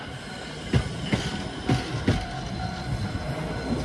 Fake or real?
real